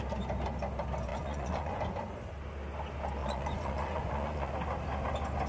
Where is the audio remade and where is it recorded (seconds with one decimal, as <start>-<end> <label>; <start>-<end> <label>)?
0.0-1.1 recorded; 1.1-1.8 remade; 1.8-3.2 recorded; 3.2-4.5 remade; 4.5-5.5 recorded